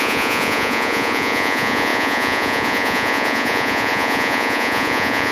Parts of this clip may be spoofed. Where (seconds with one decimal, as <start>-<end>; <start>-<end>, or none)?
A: 0.0-5.3